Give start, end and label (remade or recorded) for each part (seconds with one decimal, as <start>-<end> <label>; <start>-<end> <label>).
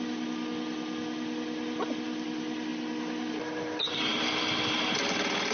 0.0-5.5 recorded